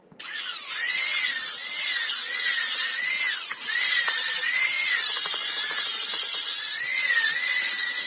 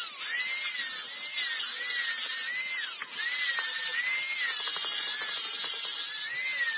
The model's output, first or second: first